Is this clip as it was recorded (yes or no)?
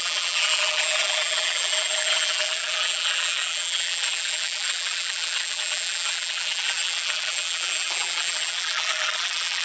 no